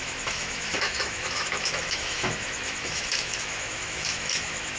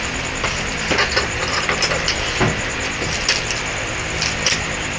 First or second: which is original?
second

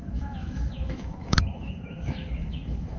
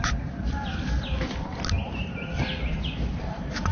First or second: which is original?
second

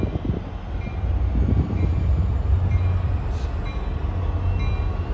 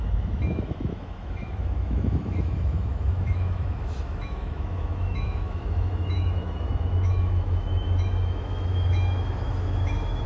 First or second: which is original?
first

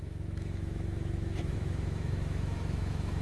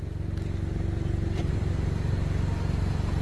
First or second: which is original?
second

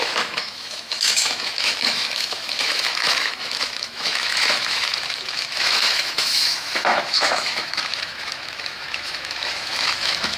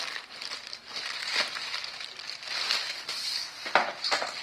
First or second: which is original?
second